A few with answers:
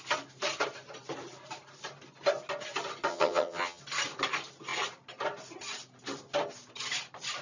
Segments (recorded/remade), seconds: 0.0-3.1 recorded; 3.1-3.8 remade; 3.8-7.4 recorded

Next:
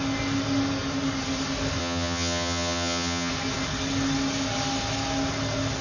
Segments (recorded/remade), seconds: 0.0-1.8 recorded; 1.8-3.3 remade; 3.3-5.8 recorded

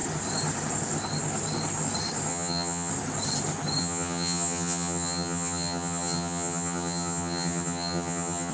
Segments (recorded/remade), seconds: 0.0-2.3 recorded; 2.3-2.9 remade; 2.9-3.8 recorded; 3.8-8.5 remade